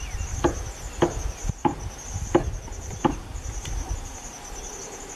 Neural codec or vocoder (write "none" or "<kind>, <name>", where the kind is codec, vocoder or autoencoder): none